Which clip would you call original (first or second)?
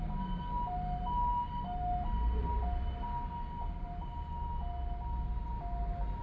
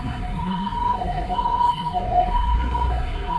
first